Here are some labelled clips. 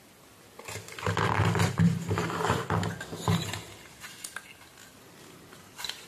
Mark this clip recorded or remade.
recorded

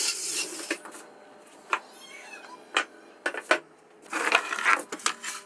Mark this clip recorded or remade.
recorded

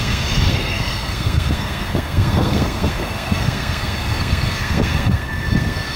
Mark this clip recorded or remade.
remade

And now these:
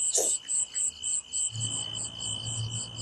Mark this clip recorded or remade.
recorded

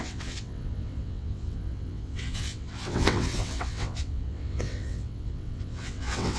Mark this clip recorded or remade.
remade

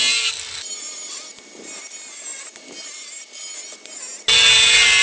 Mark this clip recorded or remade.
recorded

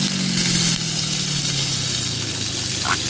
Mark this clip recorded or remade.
recorded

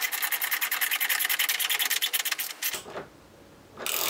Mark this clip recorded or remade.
recorded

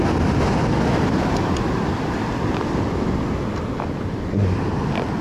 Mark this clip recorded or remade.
recorded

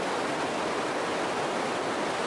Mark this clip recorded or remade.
recorded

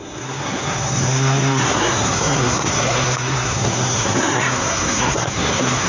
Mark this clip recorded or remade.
remade